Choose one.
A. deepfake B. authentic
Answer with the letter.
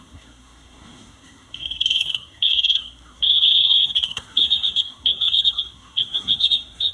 A